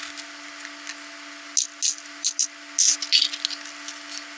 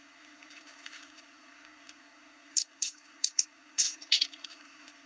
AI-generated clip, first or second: second